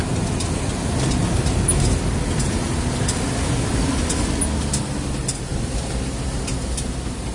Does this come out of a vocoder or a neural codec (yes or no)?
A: no